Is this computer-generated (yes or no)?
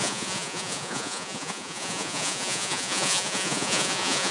yes